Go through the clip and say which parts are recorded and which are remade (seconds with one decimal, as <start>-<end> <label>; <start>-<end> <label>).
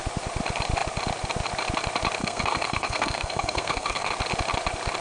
0.0-2.2 recorded; 2.2-4.1 remade; 4.1-5.0 recorded